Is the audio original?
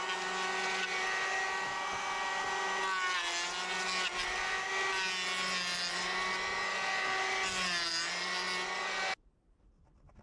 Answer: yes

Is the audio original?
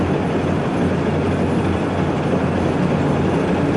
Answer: yes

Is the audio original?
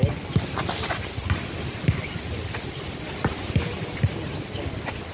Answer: yes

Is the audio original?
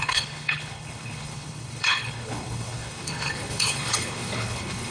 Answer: no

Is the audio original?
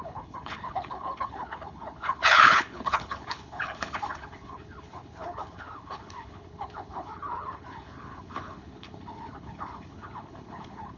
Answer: no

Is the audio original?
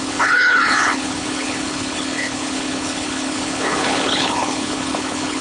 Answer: no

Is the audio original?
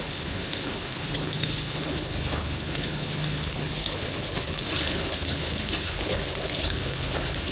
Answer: no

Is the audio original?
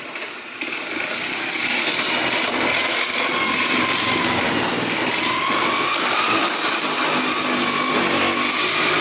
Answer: yes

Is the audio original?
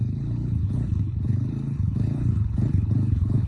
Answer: no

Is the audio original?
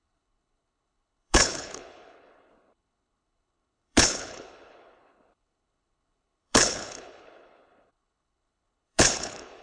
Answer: no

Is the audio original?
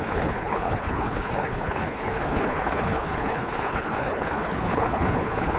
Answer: no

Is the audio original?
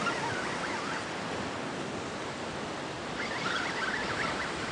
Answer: yes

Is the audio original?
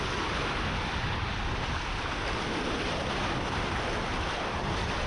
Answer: yes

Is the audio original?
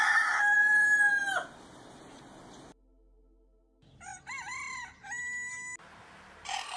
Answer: yes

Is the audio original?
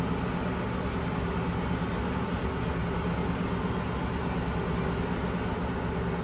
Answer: yes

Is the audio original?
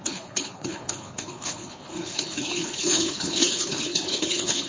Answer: no